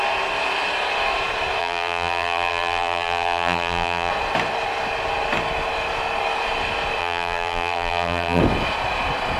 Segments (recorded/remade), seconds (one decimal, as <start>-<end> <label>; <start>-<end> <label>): 0.0-1.6 recorded; 1.6-4.1 remade; 4.1-7.0 recorded; 7.0-8.4 remade; 8.4-9.4 recorded